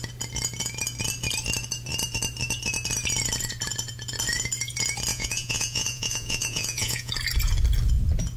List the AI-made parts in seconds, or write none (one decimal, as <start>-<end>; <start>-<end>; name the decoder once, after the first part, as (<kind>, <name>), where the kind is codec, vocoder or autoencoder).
5.1-7.1 (vocoder, Vocos)